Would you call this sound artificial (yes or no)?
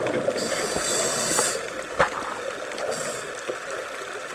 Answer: yes